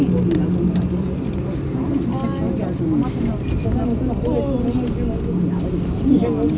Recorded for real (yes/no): yes